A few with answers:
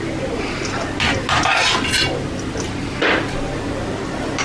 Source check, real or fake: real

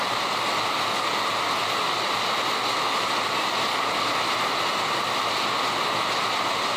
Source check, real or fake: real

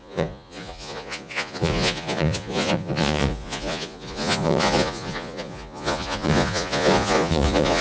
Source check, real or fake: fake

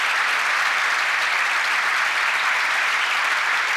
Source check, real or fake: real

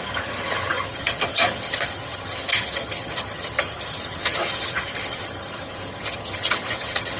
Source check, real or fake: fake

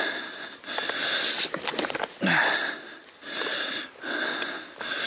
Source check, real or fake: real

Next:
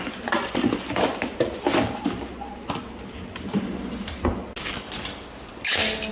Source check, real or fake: real